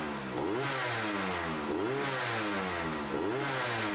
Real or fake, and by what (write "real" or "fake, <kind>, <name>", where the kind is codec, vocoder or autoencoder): real